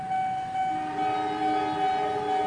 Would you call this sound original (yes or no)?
yes